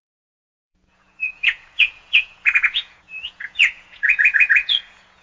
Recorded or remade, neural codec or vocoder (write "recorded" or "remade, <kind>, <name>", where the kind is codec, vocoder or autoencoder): remade, vocoder, Vocos